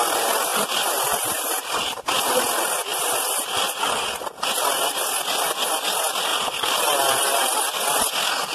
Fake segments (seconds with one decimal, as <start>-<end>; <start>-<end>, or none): 0.5-2.4; 2.9-4.4; 6.3-6.8